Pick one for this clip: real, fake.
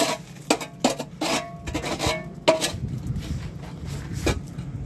real